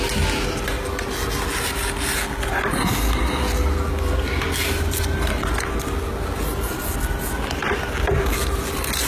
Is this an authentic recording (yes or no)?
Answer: yes